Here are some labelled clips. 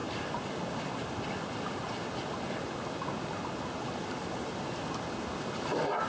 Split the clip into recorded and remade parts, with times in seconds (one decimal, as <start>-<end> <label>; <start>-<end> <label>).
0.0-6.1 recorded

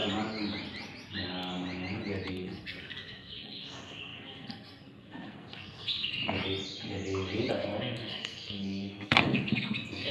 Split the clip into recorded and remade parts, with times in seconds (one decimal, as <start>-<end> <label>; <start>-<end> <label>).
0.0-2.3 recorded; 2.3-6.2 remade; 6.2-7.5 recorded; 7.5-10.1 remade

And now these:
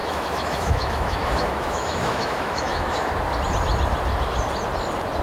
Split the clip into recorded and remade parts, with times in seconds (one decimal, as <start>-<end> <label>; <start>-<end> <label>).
0.0-3.1 remade; 3.1-5.2 recorded

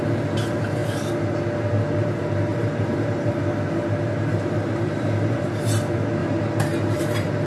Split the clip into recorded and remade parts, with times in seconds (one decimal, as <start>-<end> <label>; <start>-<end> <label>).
0.0-2.5 recorded; 2.5-3.3 remade; 3.3-4.3 recorded; 4.3-5.5 remade; 5.5-6.2 recorded; 6.2-7.5 remade

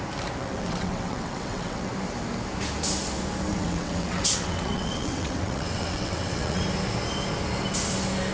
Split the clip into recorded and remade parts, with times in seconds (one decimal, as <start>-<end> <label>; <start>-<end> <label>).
0.0-0.4 recorded; 0.4-1.9 remade; 1.9-3.5 recorded; 3.5-6.6 remade; 6.6-8.3 recorded

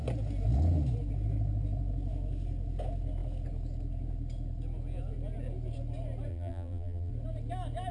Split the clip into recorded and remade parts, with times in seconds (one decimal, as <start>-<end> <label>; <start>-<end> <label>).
0.0-6.3 recorded; 6.3-7.1 remade; 7.1-7.9 recorded